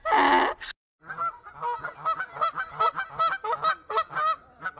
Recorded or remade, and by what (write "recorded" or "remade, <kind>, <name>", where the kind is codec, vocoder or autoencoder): recorded